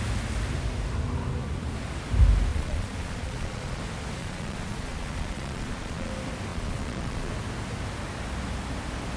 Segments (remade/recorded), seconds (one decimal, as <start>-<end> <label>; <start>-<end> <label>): 0.0-2.5 recorded; 2.5-3.8 remade; 3.8-4.2 recorded; 4.2-6.1 remade; 6.1-6.5 recorded; 6.5-7.3 remade; 7.3-9.2 recorded